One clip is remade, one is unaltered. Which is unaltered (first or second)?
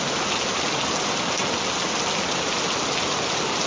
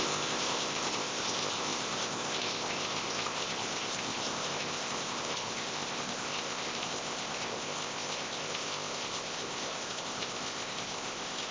first